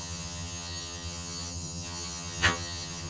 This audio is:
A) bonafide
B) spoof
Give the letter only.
B